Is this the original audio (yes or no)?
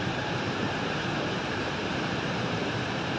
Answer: no